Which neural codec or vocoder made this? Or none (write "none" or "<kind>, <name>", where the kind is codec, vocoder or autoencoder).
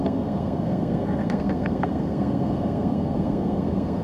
codec, SNAC